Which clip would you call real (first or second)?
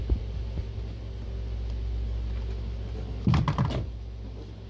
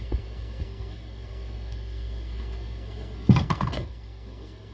first